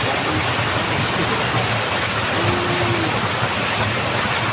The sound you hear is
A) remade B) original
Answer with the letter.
B